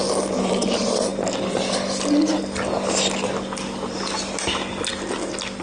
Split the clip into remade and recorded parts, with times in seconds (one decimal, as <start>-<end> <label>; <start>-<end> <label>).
0.0-5.6 recorded